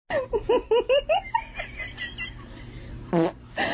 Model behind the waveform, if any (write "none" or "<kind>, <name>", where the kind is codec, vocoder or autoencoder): none